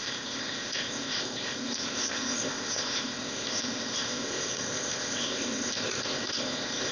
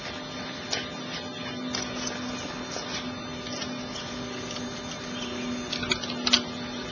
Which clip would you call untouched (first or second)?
second